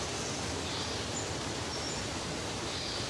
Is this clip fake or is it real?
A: real